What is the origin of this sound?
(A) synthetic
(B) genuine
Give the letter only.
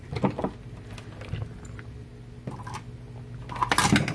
B